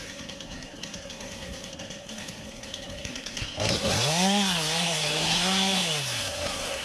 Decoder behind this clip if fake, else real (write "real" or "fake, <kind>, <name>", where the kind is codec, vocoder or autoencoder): fake, codec, SNAC